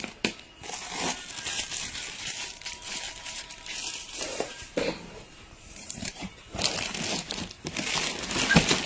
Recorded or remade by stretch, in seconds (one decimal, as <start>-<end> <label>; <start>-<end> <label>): 0.0-1.5 recorded; 1.5-6.5 remade; 6.5-8.9 recorded